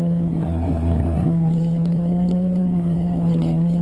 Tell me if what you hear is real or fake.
fake